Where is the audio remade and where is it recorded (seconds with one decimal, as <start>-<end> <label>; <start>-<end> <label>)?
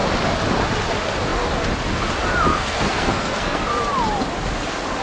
0.0-2.5 recorded; 2.5-3.7 remade; 3.7-5.0 recorded